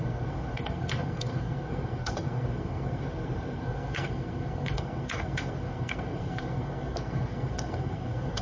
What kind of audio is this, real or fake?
fake